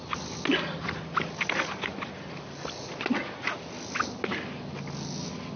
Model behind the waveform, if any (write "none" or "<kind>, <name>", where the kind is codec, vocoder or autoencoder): none